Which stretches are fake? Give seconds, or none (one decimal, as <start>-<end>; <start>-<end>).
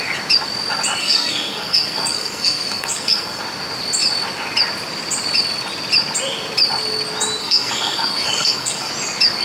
1.0-3.4; 7.4-8.9